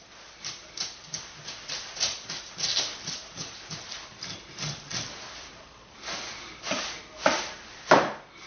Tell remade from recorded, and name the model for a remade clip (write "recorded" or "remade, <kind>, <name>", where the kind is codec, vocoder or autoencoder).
remade, vocoder, BigVGAN v2